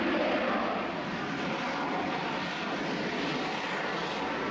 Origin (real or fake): real